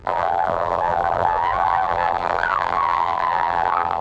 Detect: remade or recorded remade